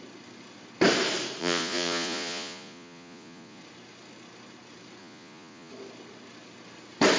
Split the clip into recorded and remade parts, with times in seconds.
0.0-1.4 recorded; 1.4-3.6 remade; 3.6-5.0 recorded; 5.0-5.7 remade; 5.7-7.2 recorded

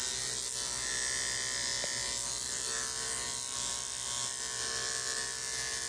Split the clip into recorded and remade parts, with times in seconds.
0.0-5.9 recorded

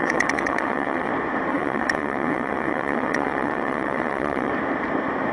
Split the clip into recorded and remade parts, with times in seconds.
0.0-1.1 remade; 1.1-1.5 recorded; 1.5-4.5 remade; 4.5-5.3 recorded

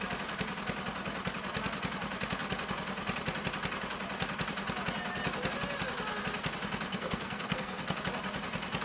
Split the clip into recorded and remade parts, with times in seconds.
0.0-6.9 recorded; 6.9-8.0 remade; 8.0-8.8 recorded

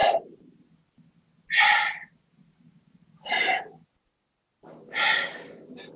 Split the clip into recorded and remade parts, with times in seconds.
0.0-0.6 remade; 0.6-2.4 recorded; 2.4-3.6 remade; 3.6-6.0 recorded

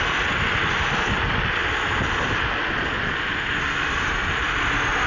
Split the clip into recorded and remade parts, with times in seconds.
0.0-5.1 recorded